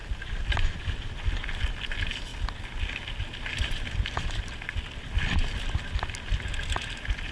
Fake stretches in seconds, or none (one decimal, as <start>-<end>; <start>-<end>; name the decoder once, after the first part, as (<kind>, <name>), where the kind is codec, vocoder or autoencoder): none